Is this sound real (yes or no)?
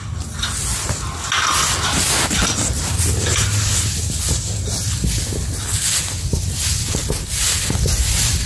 yes